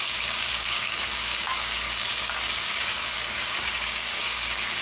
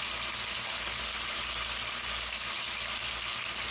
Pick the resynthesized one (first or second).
first